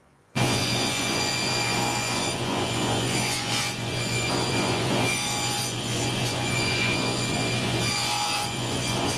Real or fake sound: fake